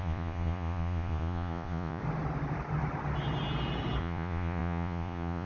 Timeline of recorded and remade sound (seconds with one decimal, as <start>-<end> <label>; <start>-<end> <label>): 0.0-2.0 remade; 2.0-4.0 recorded; 4.0-5.5 remade